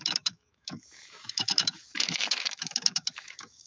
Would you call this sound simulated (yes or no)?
yes